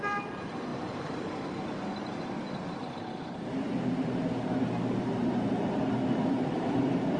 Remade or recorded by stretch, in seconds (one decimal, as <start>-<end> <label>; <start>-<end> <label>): 0.0-7.2 remade